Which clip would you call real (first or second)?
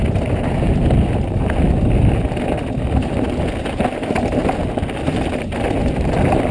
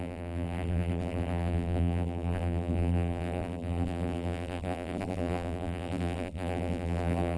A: first